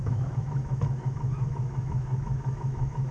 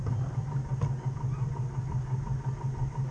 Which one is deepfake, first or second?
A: first